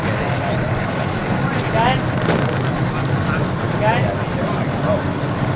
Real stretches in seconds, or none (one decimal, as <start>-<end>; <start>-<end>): 0.0-5.6